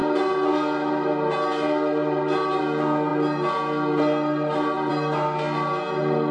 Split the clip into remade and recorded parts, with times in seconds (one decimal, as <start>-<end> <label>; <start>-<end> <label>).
0.0-6.3 recorded